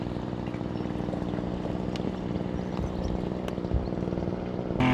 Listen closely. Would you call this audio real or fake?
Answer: real